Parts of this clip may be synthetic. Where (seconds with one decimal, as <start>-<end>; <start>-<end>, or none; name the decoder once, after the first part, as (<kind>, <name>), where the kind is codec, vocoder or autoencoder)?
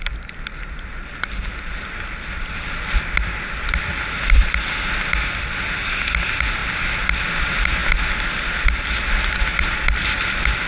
none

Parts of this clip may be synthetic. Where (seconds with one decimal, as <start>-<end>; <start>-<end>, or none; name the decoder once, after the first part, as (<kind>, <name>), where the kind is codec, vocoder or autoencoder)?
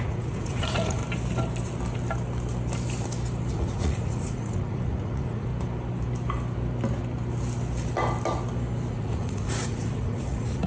0.0-1.0 (vocoder, Vocos); 3.5-5.5; 8.9-10.7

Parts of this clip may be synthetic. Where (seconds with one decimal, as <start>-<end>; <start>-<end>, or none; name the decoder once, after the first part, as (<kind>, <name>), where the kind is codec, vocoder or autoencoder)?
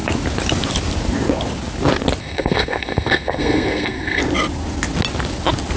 2.2-4.2 (codec, SNAC)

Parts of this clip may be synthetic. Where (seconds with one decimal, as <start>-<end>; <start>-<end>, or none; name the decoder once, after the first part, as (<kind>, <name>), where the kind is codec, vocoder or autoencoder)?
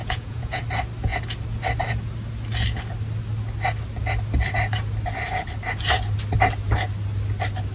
0.0-0.6 (vocoder, Vocos)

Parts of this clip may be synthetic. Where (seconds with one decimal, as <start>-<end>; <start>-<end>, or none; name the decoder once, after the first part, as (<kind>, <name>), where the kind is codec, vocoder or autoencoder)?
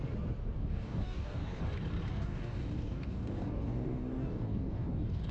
0.4-1.6 (codec, DAC); 2.1-5.3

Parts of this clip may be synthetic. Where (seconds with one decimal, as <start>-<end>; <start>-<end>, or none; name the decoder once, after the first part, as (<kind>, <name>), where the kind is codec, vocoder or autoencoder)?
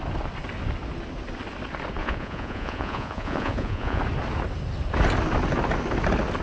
2.0-4.0 (vocoder, Vocos)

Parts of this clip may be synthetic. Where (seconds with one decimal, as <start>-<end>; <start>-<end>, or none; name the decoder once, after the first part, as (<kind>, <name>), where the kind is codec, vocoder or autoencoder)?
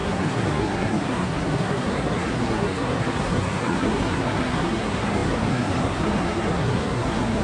0.0-7.4 (codec, SNAC)